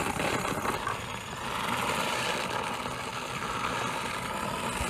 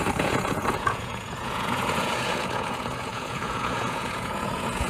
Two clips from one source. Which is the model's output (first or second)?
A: second